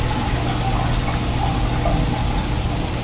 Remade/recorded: recorded